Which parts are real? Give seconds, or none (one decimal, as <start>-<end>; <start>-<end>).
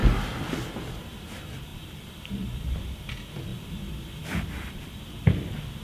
0.0-1.0; 3.5-4.2